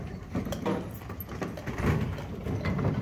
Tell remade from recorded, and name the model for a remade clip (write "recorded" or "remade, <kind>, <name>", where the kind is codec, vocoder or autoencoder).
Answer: recorded